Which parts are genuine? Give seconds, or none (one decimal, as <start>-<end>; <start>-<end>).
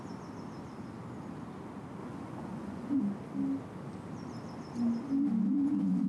0.0-2.0; 3.0-5.5